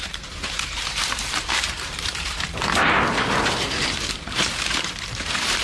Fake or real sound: fake